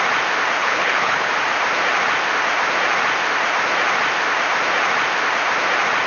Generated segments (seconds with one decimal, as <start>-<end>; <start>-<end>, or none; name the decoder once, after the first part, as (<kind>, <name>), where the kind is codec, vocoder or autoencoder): 0.6-1.3 (codec, HILCodec)